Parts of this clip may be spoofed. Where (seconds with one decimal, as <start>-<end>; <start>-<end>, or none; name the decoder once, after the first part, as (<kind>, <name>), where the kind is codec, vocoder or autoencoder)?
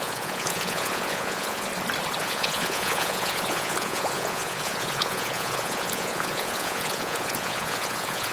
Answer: 0.0-1.7 (vocoder, Vocos); 2.2-8.3